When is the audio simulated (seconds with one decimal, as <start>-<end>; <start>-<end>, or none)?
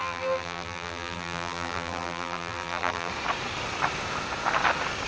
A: 0.0-3.1